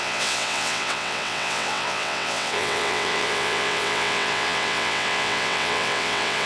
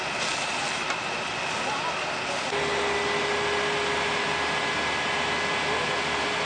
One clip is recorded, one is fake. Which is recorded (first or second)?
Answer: second